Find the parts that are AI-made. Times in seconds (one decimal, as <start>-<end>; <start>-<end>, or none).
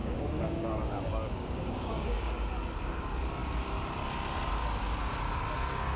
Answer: 0.0-2.5